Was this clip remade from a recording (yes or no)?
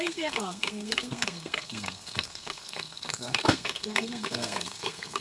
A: yes